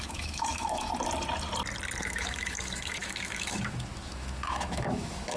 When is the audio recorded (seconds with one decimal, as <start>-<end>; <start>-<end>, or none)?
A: 0.9-2.0